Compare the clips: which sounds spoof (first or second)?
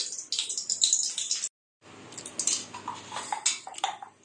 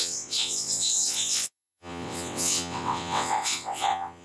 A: second